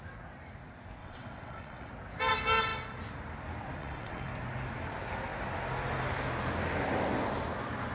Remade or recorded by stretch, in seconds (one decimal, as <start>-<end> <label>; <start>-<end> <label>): 0.0-1.0 recorded; 1.0-1.9 remade; 1.9-3.8 recorded; 3.8-4.3 remade; 4.3-7.9 recorded